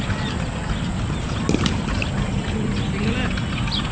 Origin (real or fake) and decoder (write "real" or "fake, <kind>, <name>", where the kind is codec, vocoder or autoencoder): real